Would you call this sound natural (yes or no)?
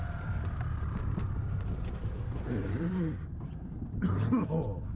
no